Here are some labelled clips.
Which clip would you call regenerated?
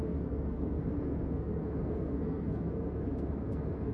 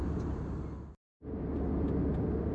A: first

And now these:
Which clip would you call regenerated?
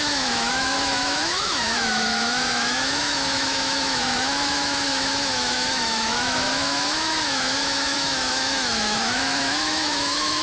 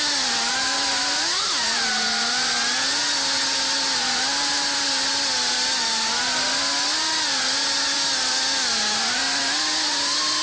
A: first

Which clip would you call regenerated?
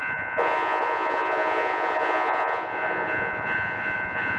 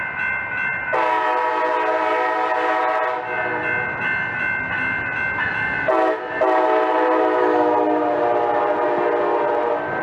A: first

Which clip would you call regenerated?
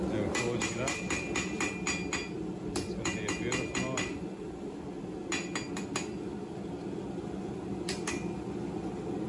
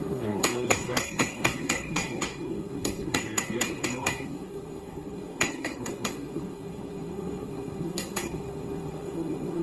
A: second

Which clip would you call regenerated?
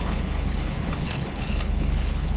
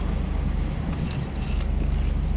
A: first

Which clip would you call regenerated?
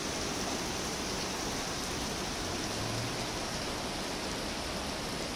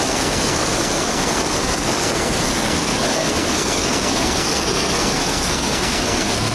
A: second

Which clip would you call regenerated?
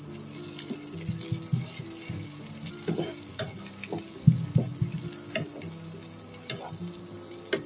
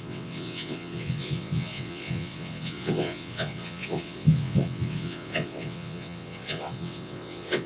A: second